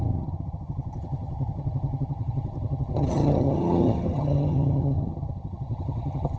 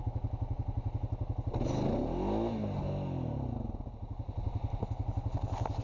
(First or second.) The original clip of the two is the second